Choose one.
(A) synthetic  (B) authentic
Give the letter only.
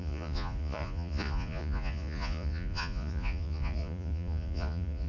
A